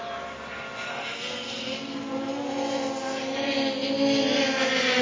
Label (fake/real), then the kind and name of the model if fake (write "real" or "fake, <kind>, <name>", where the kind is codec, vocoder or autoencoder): real